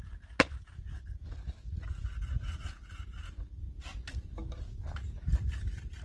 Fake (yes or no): no